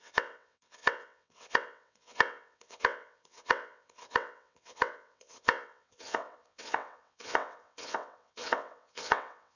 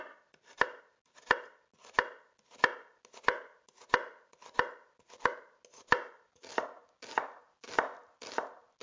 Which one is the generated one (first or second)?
first